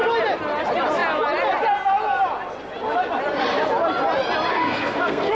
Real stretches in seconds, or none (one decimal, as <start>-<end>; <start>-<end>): 0.0-4.5